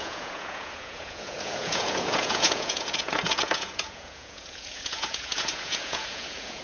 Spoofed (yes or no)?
yes